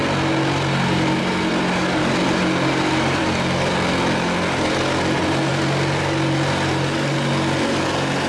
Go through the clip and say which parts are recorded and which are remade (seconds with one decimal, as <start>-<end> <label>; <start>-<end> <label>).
0.0-8.3 recorded